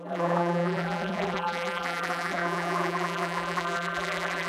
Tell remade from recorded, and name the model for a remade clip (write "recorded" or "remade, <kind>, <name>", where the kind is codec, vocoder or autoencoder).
remade, vocoder, BigVGAN v2